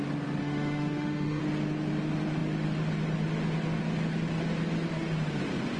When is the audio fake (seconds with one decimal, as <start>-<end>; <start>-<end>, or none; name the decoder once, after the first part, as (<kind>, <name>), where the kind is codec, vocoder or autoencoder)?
0.4-1.4 (autoencoder, DAC-VAE)